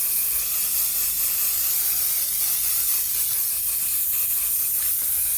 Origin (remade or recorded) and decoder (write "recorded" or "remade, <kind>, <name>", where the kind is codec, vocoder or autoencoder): recorded